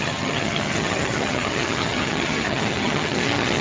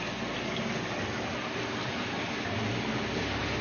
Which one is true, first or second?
second